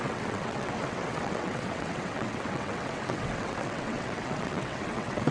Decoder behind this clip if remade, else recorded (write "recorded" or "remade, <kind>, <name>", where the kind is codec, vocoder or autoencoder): remade, vocoder, WaveNeXt